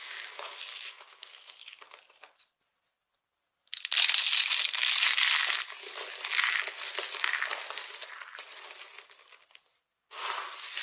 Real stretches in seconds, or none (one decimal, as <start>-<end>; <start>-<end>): 0.0-0.7; 1.5-10.8

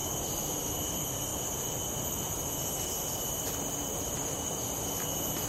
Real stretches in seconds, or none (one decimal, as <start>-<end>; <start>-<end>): 0.0-5.5

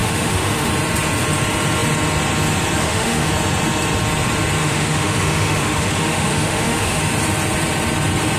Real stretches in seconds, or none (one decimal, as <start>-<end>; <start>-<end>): 0.7-2.8; 3.3-4.6; 7.0-8.4

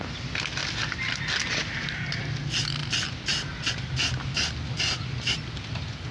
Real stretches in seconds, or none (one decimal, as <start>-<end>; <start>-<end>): 0.0-6.1